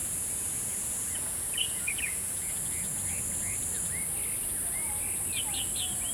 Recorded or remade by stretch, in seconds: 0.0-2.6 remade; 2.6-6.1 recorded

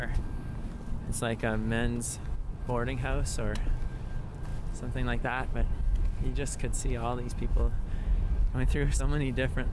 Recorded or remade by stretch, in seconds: 0.0-9.7 recorded

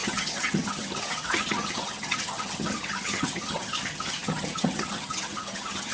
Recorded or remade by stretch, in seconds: 0.0-5.9 remade